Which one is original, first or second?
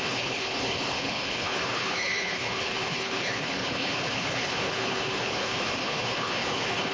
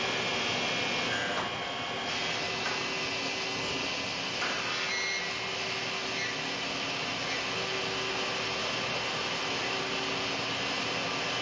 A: second